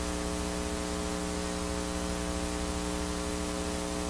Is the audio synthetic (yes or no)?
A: no